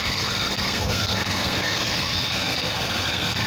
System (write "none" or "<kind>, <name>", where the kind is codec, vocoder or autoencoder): codec, SNAC